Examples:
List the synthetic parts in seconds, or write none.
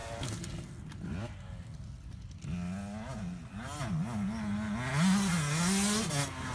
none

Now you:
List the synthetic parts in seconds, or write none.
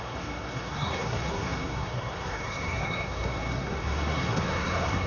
0.0-5.1 (codec, SNAC)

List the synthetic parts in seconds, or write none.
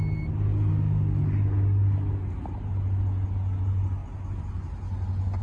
0.7-1.2 (autoencoder, DAC-VAE)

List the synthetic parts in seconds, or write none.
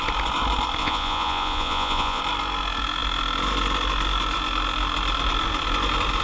0.8-2.2 (vocoder, Vocos)